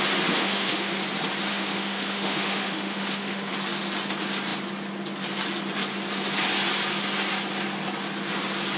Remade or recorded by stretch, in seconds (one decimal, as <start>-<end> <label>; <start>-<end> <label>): 0.0-0.4 recorded; 0.4-1.0 remade; 1.0-1.5 recorded; 1.5-3.5 remade; 3.5-8.8 recorded